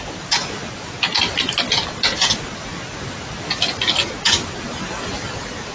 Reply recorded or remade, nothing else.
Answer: recorded